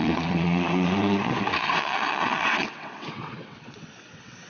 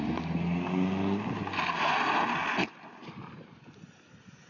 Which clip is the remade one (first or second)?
first